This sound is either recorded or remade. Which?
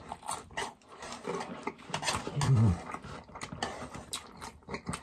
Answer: recorded